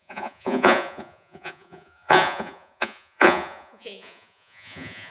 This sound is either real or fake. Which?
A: fake